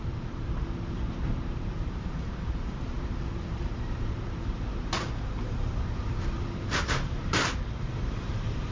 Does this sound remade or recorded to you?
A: remade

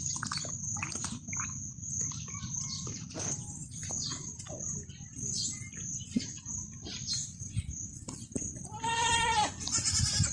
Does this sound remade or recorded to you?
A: remade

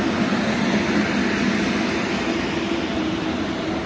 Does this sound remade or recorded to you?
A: recorded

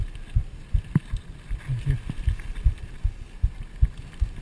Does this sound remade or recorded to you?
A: recorded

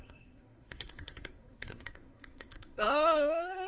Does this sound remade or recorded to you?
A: remade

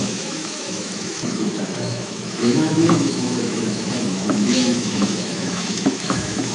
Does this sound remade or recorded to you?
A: remade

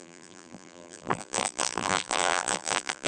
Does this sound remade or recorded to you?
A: remade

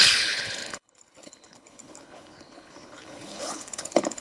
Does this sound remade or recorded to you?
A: remade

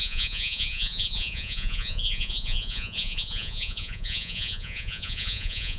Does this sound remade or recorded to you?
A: remade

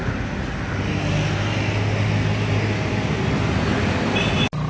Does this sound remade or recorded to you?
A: recorded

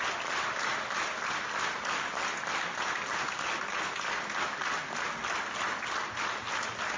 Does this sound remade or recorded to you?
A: recorded